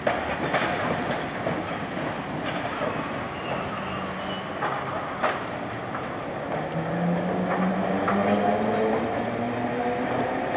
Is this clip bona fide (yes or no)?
yes